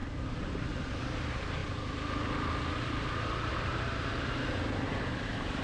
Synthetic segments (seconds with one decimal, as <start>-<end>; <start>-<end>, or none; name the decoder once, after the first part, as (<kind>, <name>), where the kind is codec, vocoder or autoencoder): 0.0-1.6 (vocoder, BigVGAN v2); 3.5-5.6